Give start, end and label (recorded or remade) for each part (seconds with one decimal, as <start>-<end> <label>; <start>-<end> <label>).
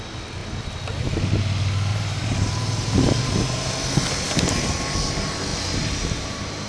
0.0-1.9 recorded; 1.9-3.3 remade; 3.3-5.5 recorded; 5.5-6.7 remade